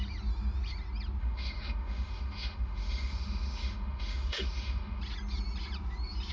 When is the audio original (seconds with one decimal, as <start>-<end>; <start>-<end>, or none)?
0.0-1.2; 5.0-6.3

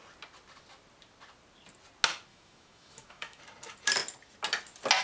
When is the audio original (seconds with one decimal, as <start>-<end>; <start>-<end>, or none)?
0.0-2.3; 3.4-5.0

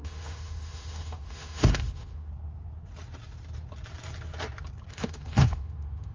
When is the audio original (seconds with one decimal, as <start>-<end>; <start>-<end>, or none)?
2.3-4.9

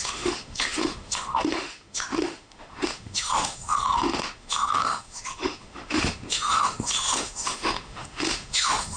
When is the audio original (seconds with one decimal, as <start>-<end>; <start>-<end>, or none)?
none

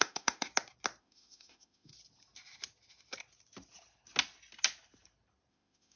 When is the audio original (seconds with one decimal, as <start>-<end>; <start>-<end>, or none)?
0.5-1.0; 1.9-5.5